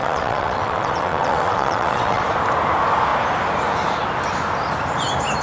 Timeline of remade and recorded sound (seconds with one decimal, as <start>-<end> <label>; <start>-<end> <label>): 0.0-2.2 remade; 2.2-5.4 recorded